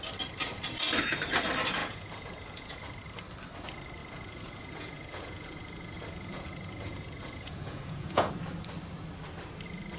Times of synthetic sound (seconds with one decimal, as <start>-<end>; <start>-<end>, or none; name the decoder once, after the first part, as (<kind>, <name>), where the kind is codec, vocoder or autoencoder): 1.8-2.8 (vocoder, Vocos); 4.0-8.3

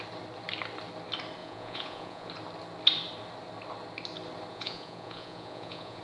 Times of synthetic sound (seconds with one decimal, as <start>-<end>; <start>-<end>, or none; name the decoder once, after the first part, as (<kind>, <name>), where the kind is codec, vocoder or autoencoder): 1.4-2.3 (vocoder, Vocos); 4.5-6.0

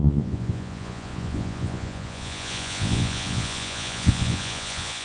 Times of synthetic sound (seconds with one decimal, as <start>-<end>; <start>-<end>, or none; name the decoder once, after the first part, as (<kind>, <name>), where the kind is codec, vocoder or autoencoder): 0.0-5.0 (vocoder, Vocos)